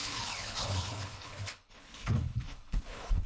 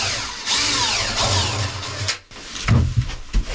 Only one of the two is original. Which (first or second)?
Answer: second